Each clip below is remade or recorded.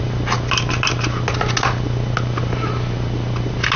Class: recorded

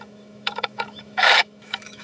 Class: remade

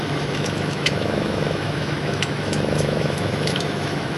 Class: remade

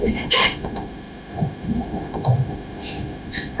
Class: remade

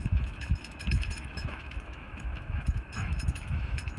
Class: remade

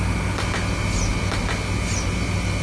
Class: recorded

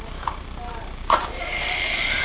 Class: recorded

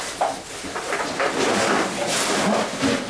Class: recorded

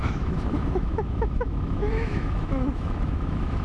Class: remade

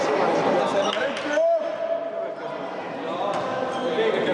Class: recorded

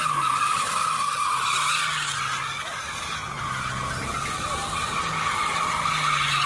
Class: recorded